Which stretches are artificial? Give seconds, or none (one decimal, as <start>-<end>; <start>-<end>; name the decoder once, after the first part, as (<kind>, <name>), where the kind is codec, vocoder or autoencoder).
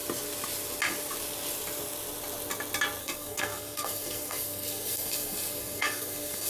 3.0-6.5 (codec, SNAC)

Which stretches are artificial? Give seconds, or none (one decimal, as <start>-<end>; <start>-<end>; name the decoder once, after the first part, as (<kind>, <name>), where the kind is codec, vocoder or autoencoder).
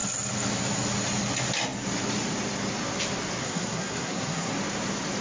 3.4-4.5 (codec, SNAC)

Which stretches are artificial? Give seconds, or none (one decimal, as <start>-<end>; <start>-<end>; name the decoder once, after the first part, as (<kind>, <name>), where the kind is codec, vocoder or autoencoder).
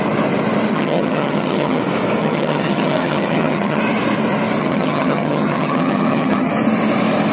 0.7-1.8 (vocoder, HiFi-GAN); 2.2-3.8; 4.6-6.5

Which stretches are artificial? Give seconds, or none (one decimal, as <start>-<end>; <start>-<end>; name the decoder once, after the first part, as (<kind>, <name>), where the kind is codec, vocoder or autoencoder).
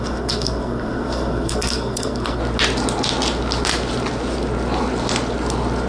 0.0-2.4 (codec, SNAC)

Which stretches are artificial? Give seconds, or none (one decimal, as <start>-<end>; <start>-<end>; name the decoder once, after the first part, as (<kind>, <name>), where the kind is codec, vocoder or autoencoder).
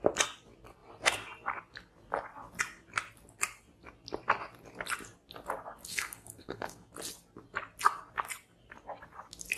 5.9-6.9 (codec, SNAC)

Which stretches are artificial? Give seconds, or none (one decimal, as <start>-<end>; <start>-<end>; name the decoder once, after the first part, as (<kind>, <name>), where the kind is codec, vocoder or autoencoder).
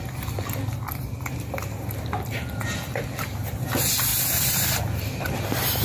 none